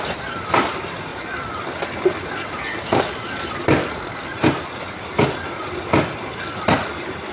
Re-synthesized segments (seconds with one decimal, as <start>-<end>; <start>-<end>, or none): none